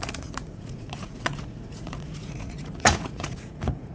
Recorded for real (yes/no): no